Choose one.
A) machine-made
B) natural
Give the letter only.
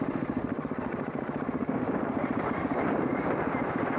B